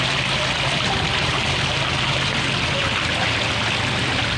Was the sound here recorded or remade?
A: recorded